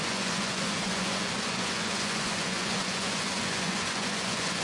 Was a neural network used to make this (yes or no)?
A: yes